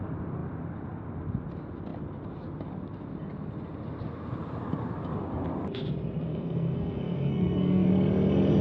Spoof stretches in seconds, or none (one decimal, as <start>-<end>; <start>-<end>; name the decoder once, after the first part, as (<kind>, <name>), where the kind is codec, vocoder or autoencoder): 6.3-7.9 (codec, SNAC)